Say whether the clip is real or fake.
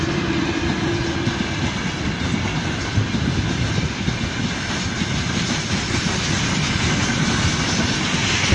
real